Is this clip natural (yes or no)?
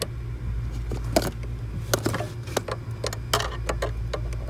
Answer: yes